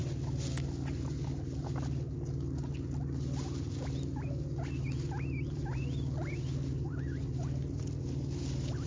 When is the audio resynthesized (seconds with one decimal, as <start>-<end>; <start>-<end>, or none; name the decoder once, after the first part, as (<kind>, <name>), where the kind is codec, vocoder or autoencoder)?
none